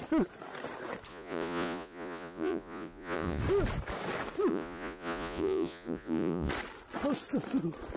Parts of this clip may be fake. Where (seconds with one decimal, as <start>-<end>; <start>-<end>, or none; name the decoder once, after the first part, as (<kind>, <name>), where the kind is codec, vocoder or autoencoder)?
1.1-3.4 (vocoder, Vocos); 4.5-6.5